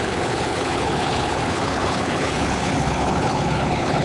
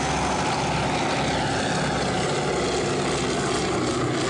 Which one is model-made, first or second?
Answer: first